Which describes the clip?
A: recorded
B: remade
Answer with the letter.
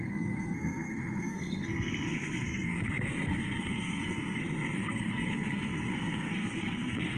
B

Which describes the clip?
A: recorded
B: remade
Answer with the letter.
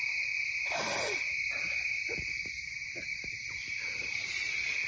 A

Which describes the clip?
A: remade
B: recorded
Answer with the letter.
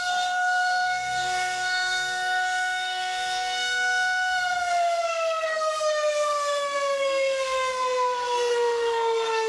A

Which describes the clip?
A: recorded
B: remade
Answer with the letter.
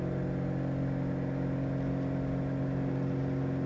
A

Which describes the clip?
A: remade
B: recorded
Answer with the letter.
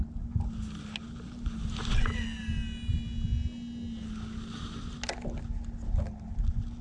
B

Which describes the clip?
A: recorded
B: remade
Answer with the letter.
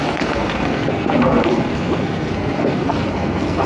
B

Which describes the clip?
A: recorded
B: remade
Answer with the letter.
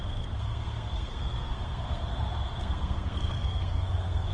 B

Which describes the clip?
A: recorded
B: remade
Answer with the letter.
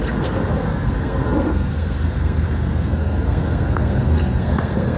B